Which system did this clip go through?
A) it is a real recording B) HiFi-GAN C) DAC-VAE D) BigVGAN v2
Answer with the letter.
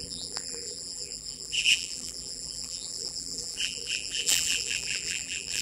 D